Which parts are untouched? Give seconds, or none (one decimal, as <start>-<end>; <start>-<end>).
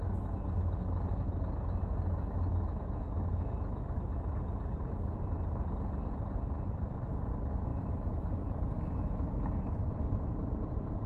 0.0-2.5; 4.0-7.7; 8.6-11.1